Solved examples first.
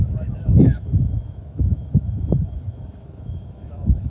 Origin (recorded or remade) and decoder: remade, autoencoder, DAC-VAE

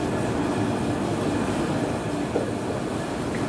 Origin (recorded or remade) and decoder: recorded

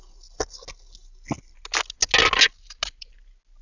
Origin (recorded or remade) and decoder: recorded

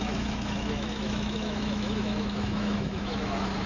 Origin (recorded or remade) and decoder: remade, autoencoder, DAC-VAE